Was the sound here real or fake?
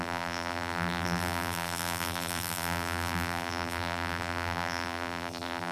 fake